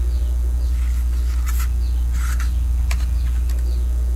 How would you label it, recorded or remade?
recorded